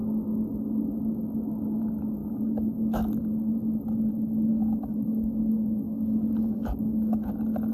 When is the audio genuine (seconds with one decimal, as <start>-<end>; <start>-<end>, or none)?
0.0-2.2; 3.2-4.5; 7.3-7.7